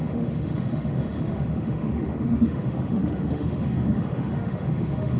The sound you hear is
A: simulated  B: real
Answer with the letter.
A